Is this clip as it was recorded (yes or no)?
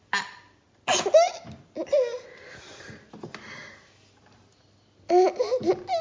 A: yes